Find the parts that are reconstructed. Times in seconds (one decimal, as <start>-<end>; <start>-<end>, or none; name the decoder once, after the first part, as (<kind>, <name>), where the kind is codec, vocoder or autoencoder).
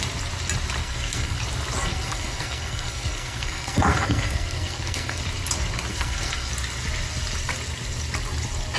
0.8-1.4 (codec, SNAC); 1.9-5.2; 5.9-6.5